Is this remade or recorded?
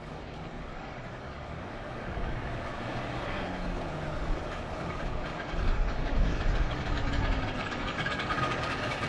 remade